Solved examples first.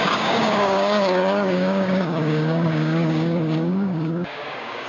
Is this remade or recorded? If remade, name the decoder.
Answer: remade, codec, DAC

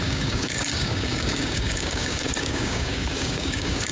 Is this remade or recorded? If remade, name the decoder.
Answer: remade, codec, DAC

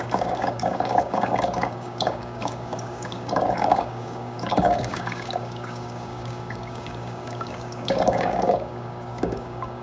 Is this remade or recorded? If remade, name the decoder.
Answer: remade, codec, DAC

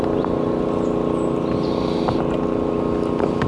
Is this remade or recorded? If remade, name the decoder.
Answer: recorded